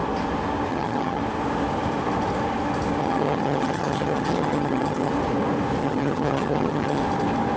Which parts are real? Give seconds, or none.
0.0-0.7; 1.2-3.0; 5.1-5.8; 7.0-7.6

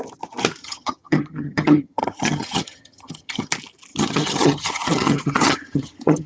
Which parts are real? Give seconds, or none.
0.0-0.6; 3.5-3.9